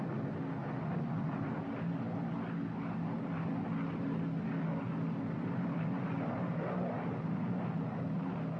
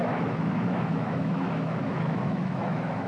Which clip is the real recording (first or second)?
first